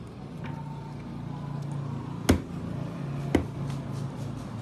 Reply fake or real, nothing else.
real